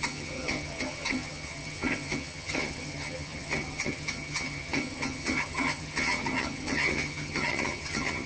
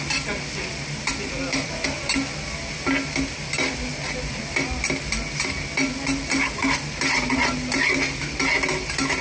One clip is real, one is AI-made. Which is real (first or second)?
second